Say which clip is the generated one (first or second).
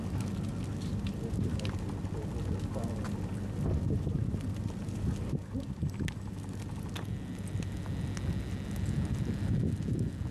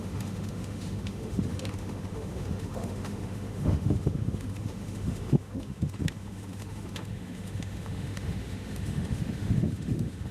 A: second